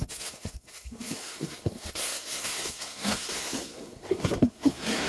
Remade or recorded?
remade